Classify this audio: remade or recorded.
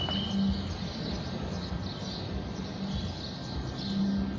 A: recorded